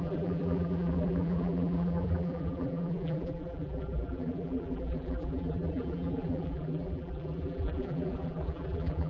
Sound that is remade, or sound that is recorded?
remade